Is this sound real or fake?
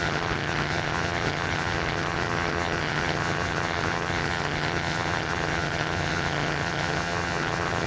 fake